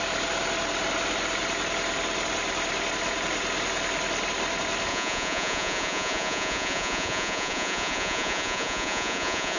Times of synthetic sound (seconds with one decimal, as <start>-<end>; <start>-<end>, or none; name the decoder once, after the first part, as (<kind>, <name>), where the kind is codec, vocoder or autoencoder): 4.9-9.6 (vocoder, Vocos)